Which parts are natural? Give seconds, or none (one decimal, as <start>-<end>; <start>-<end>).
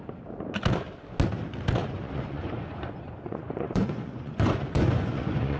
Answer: 0.0-1.8